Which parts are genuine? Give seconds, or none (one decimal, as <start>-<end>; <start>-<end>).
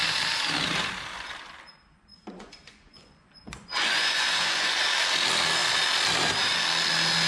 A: 0.0-2.1; 4.8-7.3